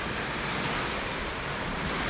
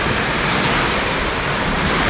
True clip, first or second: first